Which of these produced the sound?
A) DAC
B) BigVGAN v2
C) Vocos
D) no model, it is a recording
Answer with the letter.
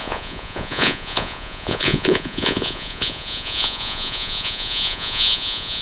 C